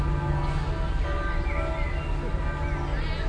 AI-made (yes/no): no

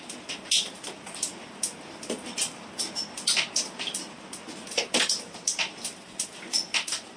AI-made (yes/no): no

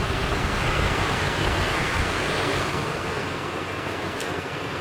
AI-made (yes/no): yes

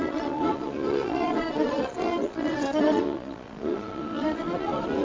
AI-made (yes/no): yes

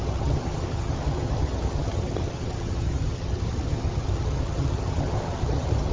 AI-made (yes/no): yes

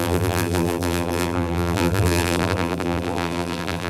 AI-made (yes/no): yes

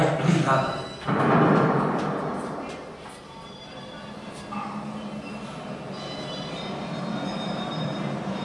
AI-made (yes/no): no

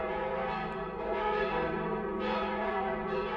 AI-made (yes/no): yes